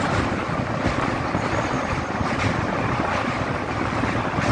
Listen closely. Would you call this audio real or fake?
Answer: real